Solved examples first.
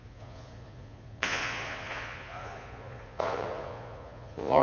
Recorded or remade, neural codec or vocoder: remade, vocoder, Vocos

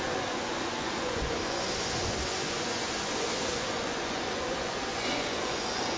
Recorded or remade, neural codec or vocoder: remade, vocoder, Vocos